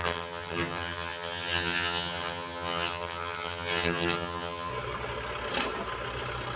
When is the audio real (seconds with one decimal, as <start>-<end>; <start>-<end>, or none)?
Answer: 4.7-6.6